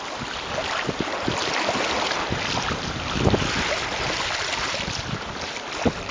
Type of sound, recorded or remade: recorded